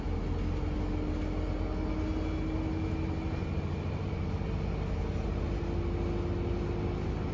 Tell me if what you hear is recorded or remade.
recorded